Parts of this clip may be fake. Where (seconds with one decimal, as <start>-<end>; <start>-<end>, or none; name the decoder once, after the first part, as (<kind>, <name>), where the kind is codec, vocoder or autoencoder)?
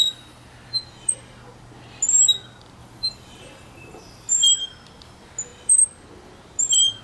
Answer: 2.8-4.3 (vocoder, BigVGAN v2)